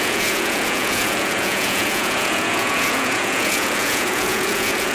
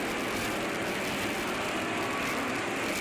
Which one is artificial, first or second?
first